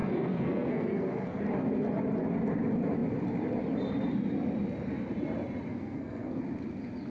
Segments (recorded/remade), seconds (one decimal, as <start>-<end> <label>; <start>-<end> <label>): 0.0-1.4 remade; 1.4-5.7 recorded; 5.7-6.4 remade; 6.4-7.1 recorded